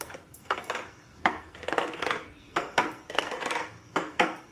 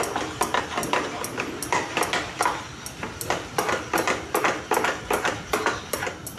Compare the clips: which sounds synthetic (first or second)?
first